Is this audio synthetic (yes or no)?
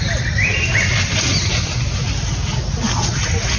no